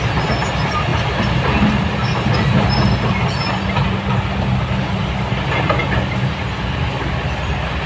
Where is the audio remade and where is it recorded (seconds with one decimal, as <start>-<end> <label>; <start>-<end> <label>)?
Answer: 0.0-7.9 recorded